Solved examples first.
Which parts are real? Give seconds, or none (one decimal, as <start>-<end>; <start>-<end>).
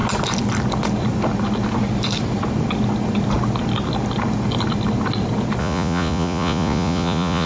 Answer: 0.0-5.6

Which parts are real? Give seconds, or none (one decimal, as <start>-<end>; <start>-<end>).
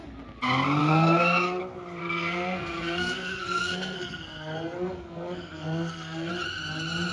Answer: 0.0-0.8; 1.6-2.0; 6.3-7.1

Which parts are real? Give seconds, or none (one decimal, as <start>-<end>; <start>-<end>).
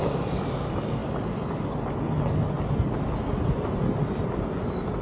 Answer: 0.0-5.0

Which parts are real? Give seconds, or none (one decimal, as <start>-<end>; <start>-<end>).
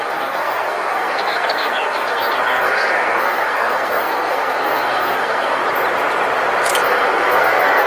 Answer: 5.6-6.8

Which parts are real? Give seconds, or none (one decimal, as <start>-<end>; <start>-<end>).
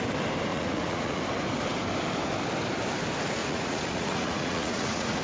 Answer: 0.0-0.5; 1.2-3.4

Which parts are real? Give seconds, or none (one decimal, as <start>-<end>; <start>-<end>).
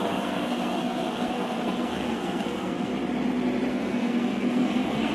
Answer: 2.9-3.7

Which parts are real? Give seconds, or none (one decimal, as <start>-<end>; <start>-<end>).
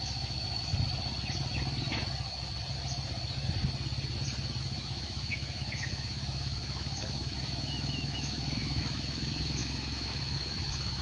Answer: 0.7-4.6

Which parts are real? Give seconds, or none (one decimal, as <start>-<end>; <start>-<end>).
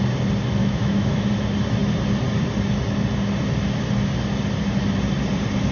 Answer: 0.0-0.6; 1.3-5.7